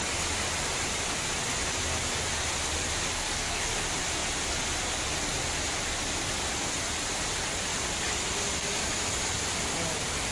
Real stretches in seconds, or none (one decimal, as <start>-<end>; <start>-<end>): 0.0-3.1; 3.7-10.3